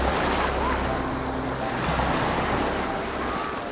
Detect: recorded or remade recorded